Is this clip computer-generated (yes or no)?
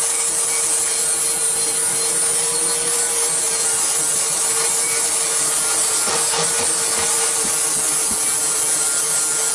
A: no